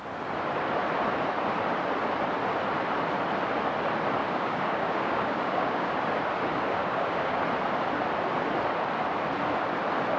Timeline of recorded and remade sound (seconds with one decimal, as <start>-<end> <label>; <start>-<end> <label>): 0.0-4.2 recorded; 4.2-5.9 remade; 5.9-6.8 recorded; 6.8-7.4 remade; 7.4-10.2 recorded